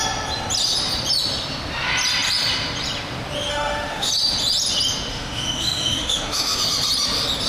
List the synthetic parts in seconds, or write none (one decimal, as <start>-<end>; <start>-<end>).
3.5-4.1; 5.1-6.6